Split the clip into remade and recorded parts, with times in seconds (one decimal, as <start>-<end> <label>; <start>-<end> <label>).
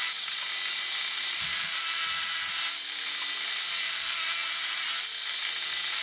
0.0-6.0 recorded